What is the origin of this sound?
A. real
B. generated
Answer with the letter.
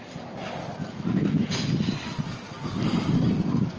A